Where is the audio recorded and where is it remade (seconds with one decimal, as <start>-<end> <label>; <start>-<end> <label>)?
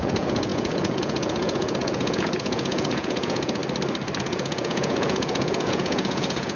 0.0-3.6 remade; 3.6-4.2 recorded; 4.2-6.6 remade